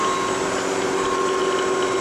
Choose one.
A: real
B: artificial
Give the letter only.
A